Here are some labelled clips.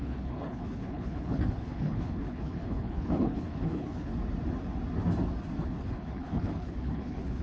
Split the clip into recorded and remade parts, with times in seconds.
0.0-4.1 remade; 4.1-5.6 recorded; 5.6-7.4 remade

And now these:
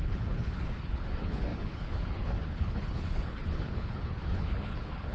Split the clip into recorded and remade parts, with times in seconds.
0.0-5.1 remade

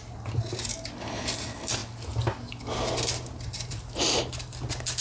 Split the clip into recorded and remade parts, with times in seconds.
0.0-5.0 recorded

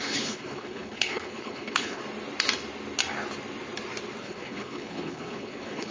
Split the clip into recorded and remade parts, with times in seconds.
0.0-2.0 remade; 2.0-4.2 recorded; 4.2-5.9 remade

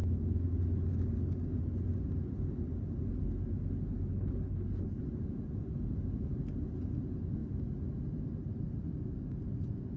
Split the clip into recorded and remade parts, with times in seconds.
0.0-4.1 recorded; 4.1-5.0 remade; 5.0-10.0 recorded